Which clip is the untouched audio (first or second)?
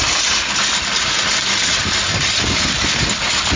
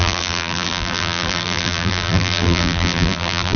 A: first